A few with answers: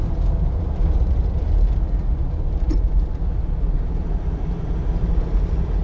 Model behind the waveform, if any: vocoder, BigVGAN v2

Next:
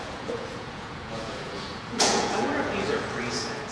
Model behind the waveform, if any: vocoder, Vocos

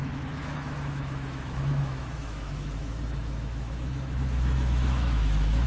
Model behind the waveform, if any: autoencoder, DAC-VAE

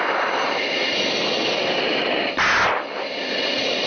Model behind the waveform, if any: none